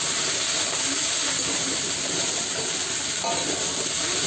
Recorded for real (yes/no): yes